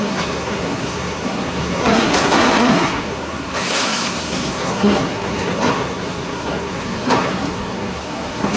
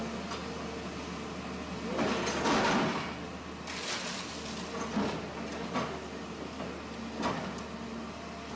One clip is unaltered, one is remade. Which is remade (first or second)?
first